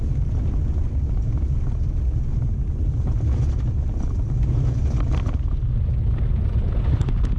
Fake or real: real